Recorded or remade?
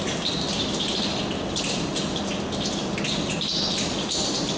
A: recorded